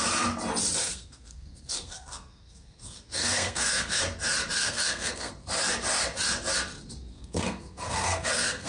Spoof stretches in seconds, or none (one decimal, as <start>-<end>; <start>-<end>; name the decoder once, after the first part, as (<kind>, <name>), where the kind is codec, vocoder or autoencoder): 0.8-4.0 (codec, SNAC); 4.6-5.3; 7.1-8.7